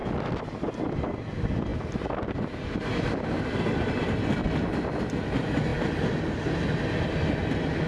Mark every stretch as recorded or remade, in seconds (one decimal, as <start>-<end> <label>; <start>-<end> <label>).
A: 0.0-7.9 recorded